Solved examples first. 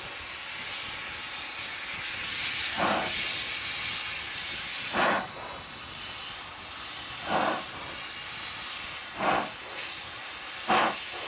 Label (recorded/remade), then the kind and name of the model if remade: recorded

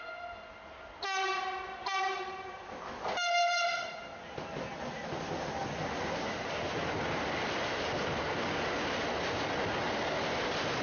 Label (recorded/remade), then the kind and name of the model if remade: recorded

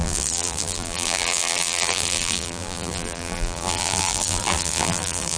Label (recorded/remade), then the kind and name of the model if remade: remade, vocoder, BigVGAN v2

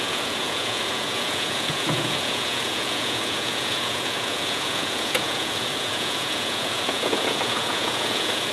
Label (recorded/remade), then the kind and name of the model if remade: remade, vocoder, Vocos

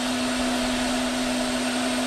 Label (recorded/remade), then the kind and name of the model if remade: recorded